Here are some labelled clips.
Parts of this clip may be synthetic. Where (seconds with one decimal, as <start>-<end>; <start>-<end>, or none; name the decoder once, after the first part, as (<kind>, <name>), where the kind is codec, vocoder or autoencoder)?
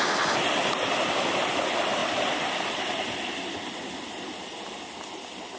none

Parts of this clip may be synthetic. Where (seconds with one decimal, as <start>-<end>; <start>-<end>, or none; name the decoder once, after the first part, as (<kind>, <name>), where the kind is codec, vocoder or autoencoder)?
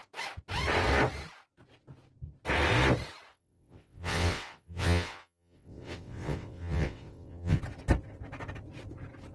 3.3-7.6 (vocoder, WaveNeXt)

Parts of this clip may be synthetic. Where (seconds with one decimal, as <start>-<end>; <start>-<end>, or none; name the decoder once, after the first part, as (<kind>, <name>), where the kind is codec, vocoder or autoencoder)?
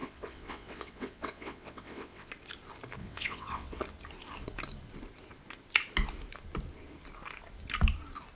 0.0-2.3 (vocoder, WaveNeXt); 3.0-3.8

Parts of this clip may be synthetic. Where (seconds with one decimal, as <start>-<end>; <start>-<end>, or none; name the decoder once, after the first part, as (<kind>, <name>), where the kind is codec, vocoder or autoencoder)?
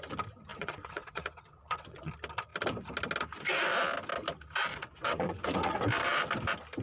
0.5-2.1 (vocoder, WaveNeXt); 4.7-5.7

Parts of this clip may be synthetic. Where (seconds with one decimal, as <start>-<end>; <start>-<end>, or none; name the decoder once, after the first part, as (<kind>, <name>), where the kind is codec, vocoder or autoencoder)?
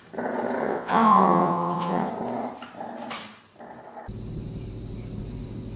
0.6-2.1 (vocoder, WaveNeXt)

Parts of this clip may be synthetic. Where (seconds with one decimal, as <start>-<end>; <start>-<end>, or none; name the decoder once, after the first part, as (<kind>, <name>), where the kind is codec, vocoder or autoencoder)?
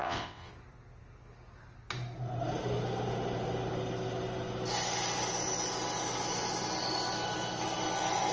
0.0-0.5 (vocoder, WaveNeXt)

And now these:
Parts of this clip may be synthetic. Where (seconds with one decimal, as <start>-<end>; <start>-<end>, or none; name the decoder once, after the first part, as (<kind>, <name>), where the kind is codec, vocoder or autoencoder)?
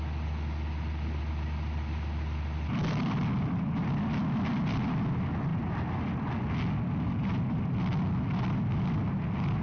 none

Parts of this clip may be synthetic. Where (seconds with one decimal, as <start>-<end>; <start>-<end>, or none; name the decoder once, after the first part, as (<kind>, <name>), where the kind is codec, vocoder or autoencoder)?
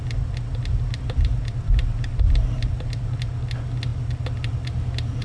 none